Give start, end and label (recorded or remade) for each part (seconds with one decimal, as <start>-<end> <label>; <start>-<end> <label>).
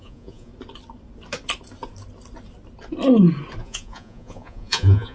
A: 0.0-0.5 remade; 0.5-3.6 recorded; 3.6-5.1 remade